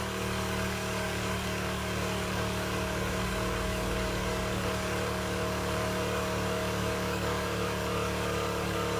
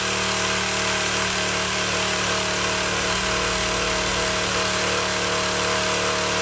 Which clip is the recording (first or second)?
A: second